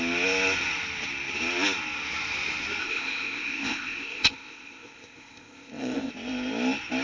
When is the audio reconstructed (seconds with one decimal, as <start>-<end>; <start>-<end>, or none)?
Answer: 2.8-6.1